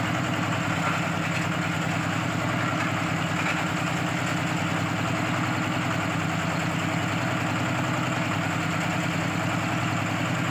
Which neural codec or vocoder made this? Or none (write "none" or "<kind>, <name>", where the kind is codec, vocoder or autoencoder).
none